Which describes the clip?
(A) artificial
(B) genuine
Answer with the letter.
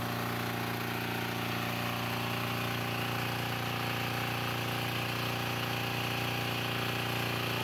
B